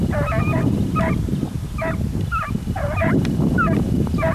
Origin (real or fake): real